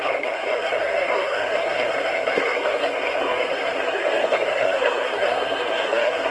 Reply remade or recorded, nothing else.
remade